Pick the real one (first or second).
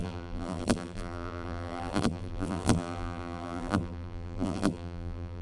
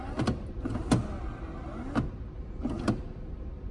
second